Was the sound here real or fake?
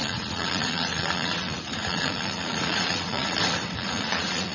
fake